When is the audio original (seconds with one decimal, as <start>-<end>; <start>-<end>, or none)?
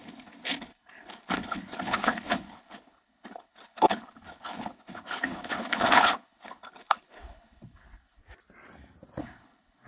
8.2-9.2